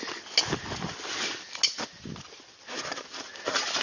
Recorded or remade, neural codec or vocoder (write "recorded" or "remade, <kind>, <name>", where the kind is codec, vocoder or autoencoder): recorded